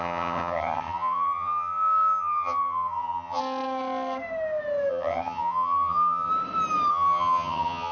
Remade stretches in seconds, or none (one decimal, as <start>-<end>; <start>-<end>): 0.0-3.4; 4.9-6.3; 6.9-7.9